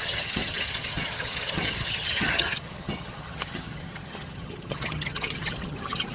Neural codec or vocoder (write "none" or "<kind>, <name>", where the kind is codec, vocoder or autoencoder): vocoder, HiFi-GAN